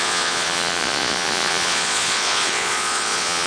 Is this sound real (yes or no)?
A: no